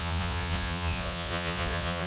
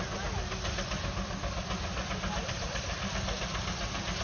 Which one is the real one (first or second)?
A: second